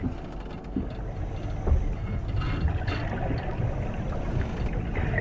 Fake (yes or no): no